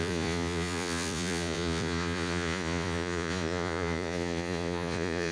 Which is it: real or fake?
fake